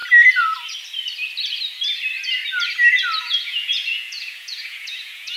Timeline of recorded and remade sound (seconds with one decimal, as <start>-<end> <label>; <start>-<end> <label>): 0.0-3.2 recorded; 3.2-5.4 remade